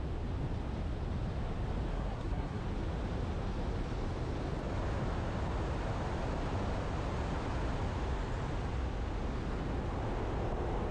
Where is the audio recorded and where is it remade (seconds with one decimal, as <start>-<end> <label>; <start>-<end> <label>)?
0.0-1.9 recorded; 1.9-2.6 remade; 2.6-10.9 recorded